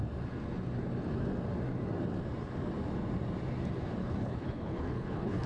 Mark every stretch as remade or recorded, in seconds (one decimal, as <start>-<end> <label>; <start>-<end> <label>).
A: 0.0-4.0 recorded; 4.0-5.5 remade

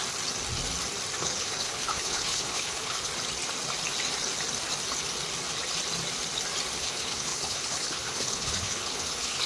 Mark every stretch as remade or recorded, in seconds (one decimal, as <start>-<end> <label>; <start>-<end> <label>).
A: 0.0-1.2 recorded; 1.2-3.1 remade; 3.1-6.8 recorded; 6.8-9.5 remade

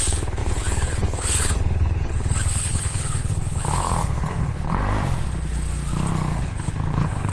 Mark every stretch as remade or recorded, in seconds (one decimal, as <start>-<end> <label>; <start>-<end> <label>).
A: 0.0-4.8 remade; 4.8-6.4 recorded; 6.4-7.3 remade

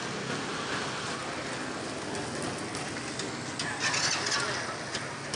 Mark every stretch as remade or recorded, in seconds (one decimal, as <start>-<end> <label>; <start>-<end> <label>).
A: 0.0-5.4 recorded

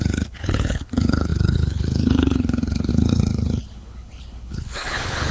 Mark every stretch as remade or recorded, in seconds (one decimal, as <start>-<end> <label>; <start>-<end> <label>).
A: 0.0-5.3 remade

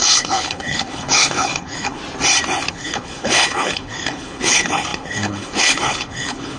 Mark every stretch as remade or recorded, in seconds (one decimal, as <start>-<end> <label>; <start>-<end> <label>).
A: 0.0-2.0 remade; 2.0-2.7 recorded; 2.7-6.6 remade